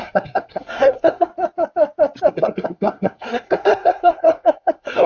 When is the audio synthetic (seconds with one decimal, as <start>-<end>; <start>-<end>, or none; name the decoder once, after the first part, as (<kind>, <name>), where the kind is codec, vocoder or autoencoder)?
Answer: 0.0-1.3 (codec, SNAC); 2.3-5.1